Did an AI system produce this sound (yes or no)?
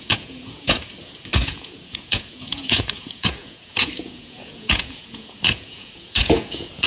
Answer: yes